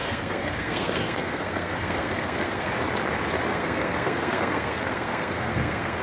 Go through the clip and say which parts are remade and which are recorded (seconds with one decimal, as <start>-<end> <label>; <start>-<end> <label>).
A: 0.0-2.7 remade; 2.7-3.5 recorded; 3.5-6.0 remade